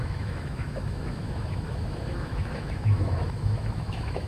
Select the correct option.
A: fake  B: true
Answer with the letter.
A